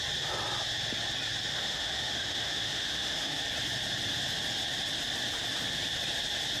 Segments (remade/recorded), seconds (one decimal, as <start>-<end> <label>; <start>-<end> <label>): 0.0-1.5 recorded; 1.5-3.4 remade; 3.4-6.6 recorded